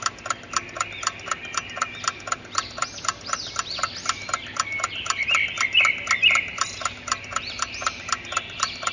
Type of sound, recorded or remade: recorded